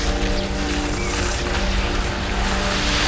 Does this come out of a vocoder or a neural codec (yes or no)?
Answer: no